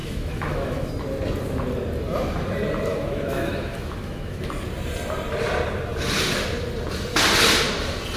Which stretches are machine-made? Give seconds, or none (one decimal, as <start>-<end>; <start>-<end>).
0.0-0.9; 2.9-4.5